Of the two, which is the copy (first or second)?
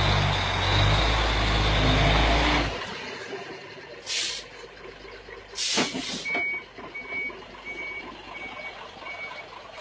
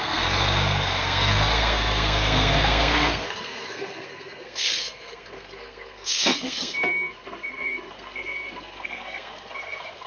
second